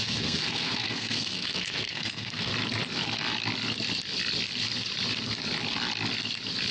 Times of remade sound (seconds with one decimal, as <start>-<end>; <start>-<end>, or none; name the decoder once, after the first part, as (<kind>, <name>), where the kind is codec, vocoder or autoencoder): 0.0-2.5 (codec, SNAC)